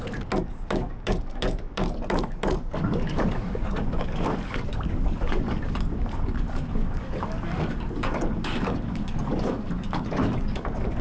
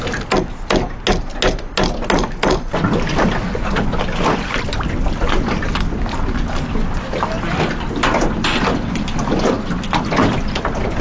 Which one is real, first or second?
second